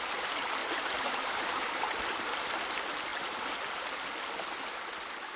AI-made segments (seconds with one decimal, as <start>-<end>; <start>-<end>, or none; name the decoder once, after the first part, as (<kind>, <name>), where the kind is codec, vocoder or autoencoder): 0.6-2.0 (vocoder, BigVGAN v2)